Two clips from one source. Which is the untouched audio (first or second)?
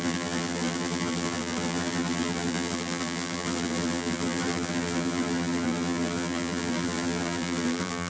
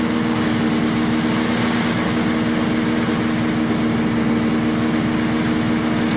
second